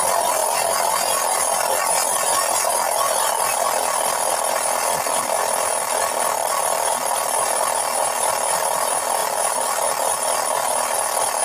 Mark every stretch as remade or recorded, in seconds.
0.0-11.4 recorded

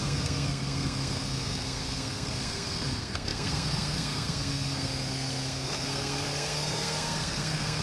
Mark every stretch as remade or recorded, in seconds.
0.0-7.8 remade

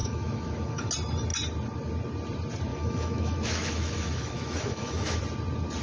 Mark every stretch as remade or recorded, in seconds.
0.0-0.9 remade; 0.9-2.7 recorded; 2.7-5.2 remade; 5.2-5.8 recorded

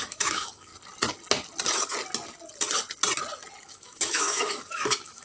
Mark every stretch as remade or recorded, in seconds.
0.0-0.7 remade; 0.7-3.6 recorded; 3.6-5.2 remade

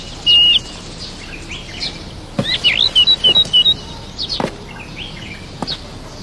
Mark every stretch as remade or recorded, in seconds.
0.0-6.2 recorded

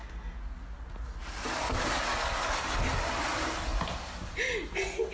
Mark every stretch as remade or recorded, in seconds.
0.0-5.1 recorded